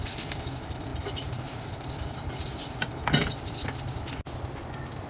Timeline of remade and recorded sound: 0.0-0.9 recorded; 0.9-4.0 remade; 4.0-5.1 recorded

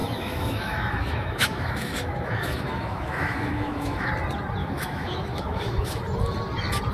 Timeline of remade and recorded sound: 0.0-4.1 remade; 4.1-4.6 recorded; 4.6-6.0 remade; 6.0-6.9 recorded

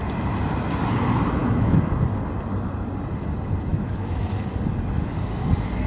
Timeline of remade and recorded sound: 0.0-1.4 recorded; 1.4-1.9 remade; 1.9-3.7 recorded; 3.7-4.3 remade; 4.3-5.9 recorded

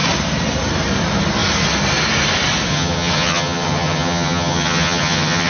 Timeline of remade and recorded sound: 0.0-2.7 recorded; 2.7-5.5 remade

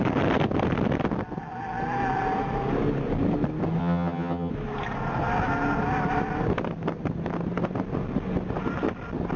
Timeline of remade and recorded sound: 0.0-3.8 recorded; 3.8-4.5 remade; 4.5-9.4 recorded

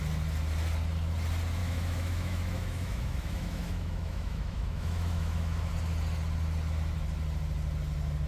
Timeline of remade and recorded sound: 0.0-1.6 recorded; 1.6-5.7 remade; 5.7-8.3 recorded

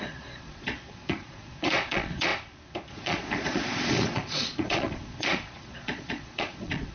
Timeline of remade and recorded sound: 0.0-2.3 remade; 2.3-2.9 recorded; 2.9-6.9 remade